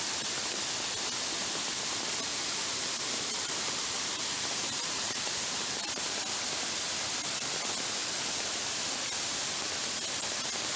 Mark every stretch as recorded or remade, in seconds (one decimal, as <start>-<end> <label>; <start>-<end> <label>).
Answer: 0.0-2.3 recorded; 2.3-5.8 remade; 5.8-8.0 recorded; 8.0-8.8 remade; 8.8-10.8 recorded